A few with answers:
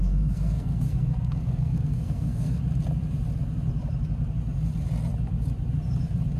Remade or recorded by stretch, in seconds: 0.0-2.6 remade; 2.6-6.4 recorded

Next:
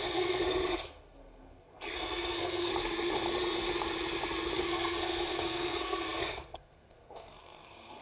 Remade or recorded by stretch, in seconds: 0.0-2.7 remade; 2.7-4.7 recorded; 4.7-8.0 remade

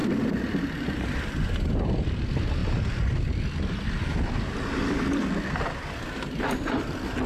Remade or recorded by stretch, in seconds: 0.0-7.3 recorded

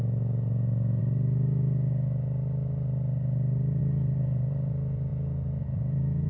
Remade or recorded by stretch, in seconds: 0.0-1.0 remade; 1.0-3.8 recorded; 3.8-6.3 remade